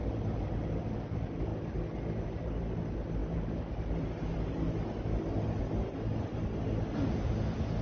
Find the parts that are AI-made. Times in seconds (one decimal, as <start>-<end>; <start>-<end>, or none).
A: none